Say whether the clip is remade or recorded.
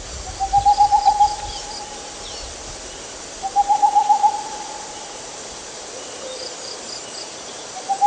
recorded